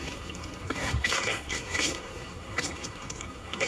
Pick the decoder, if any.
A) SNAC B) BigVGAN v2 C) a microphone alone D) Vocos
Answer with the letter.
A